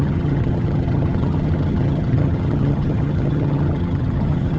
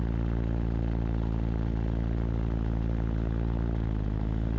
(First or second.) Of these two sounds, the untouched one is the second